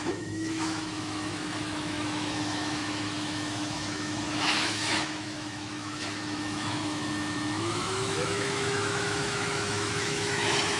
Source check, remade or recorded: remade